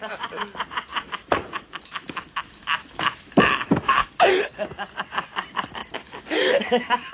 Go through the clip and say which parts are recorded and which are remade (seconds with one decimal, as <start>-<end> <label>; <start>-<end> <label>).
0.0-0.9 recorded; 0.9-4.3 remade; 4.3-5.8 recorded; 5.8-7.1 remade